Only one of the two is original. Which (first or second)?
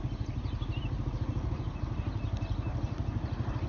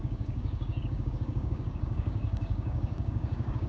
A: first